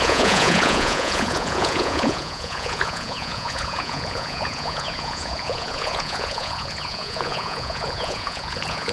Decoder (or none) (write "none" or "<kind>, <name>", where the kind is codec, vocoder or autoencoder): vocoder, Vocos